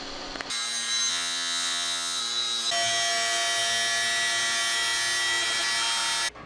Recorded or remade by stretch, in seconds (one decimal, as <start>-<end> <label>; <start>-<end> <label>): 0.0-1.1 recorded; 1.1-2.2 remade; 2.2-6.5 recorded